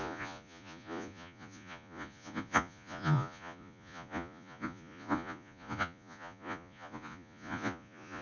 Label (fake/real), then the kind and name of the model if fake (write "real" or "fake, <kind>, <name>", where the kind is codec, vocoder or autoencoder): fake, vocoder, Vocos